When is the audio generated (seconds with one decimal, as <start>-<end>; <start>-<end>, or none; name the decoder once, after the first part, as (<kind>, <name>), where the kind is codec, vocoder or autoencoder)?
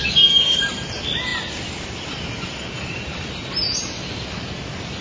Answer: 0.0-0.6 (codec, DAC)